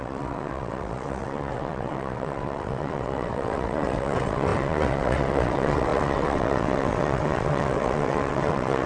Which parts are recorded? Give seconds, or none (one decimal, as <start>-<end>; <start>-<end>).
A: none